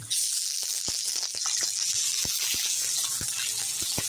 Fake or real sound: fake